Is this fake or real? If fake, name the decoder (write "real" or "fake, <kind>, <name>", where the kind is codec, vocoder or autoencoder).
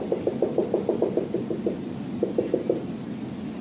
real